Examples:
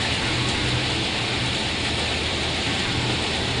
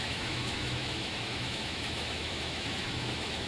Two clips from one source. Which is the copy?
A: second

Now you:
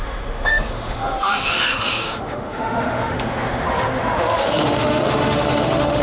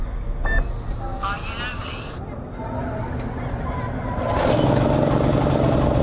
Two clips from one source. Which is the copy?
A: first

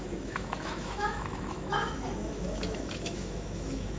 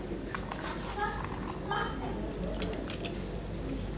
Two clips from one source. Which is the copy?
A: first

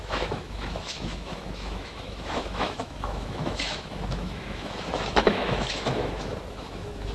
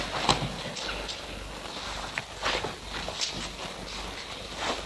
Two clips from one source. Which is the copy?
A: first